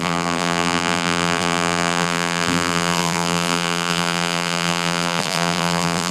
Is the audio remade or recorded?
remade